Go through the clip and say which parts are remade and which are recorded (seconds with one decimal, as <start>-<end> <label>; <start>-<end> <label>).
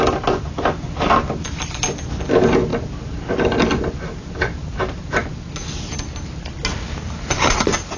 0.0-8.0 recorded